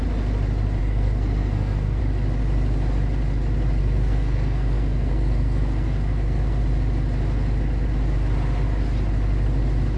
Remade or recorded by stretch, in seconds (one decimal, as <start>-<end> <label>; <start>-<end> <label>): 0.0-0.8 recorded; 0.8-2.0 remade; 2.0-3.8 recorded; 3.8-6.6 remade; 6.6-10.0 recorded